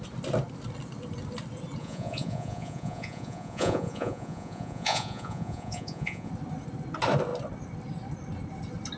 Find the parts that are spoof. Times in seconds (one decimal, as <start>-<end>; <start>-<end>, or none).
1.8-6.3